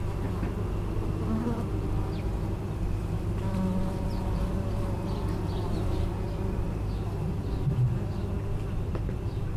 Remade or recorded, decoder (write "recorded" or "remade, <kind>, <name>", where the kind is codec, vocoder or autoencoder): recorded